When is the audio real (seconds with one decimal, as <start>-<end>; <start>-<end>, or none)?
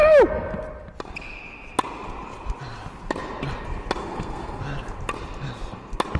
0.0-4.0; 4.6-6.2